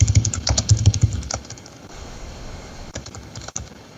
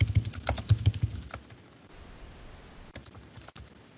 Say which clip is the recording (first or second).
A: second